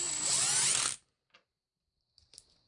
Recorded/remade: recorded